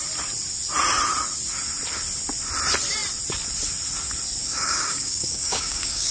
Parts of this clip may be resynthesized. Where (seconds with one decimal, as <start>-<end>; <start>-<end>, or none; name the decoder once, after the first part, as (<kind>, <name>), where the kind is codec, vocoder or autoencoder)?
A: 4.4-6.1 (codec, DAC)